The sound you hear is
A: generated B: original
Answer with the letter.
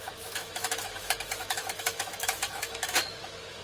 A